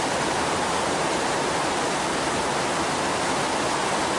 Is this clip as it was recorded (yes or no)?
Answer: yes